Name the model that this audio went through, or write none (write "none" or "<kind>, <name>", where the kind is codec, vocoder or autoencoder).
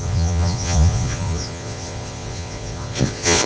vocoder, Vocos